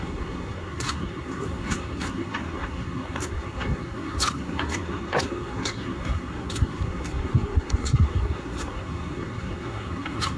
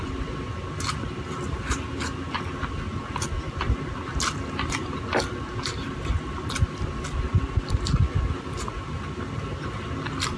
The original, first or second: second